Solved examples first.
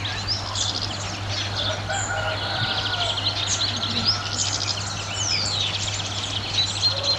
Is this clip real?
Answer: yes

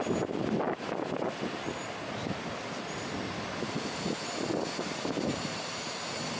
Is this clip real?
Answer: yes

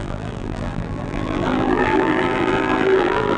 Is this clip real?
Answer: no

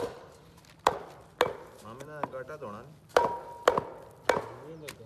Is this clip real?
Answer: yes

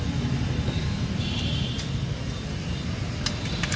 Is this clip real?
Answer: yes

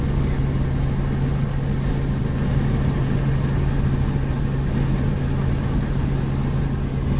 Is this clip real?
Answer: yes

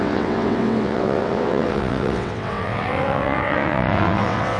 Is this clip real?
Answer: no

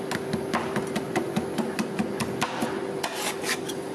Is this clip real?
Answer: yes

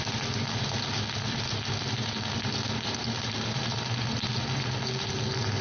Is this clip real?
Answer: yes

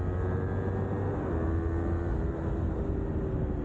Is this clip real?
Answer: yes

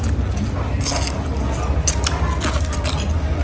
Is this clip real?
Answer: yes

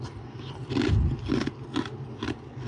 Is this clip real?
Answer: yes